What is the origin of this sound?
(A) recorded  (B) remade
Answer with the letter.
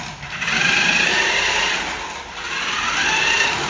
A